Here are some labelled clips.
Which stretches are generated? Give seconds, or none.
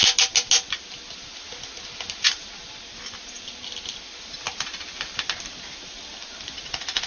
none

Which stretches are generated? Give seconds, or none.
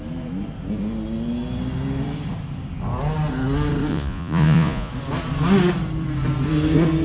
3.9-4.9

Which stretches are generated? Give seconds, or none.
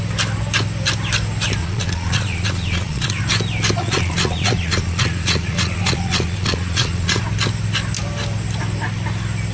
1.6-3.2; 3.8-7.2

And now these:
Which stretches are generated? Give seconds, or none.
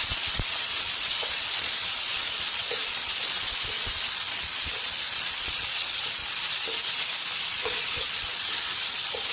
0.0-6.2; 7.4-9.3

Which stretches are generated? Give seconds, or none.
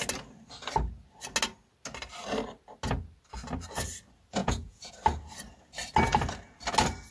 4.4-4.9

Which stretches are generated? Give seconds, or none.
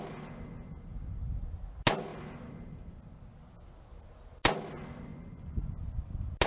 5.1-5.7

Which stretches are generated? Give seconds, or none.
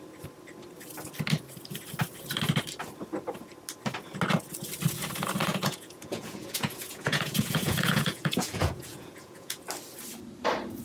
5.5-9.6